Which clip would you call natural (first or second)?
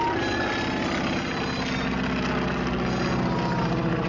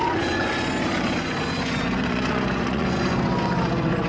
first